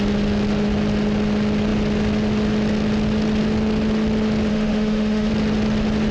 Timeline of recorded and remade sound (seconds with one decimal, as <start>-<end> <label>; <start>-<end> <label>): 0.0-4.5 recorded; 4.5-5.3 remade; 5.3-6.1 recorded